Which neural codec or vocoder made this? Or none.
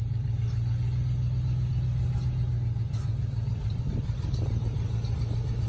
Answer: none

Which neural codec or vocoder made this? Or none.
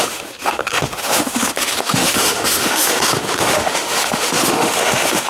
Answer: autoencoder, DAC-VAE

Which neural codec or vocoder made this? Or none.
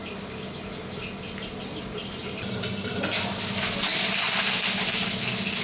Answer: none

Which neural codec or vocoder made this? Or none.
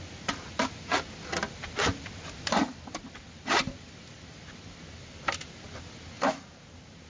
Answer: none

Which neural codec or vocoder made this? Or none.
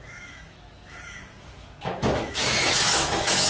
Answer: autoencoder, DAC-VAE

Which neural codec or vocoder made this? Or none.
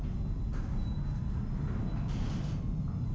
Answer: none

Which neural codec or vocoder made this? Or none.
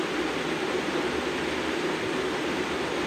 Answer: none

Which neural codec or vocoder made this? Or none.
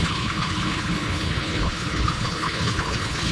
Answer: codec, HILCodec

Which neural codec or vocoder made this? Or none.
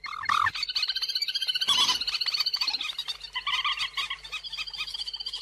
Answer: none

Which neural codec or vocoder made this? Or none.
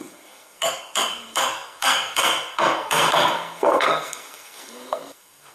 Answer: codec, SNAC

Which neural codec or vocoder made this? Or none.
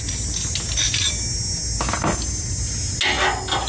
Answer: none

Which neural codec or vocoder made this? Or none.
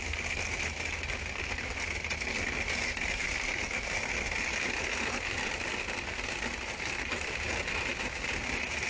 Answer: none